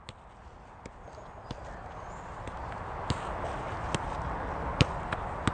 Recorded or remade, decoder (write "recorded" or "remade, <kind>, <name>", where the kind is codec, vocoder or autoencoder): recorded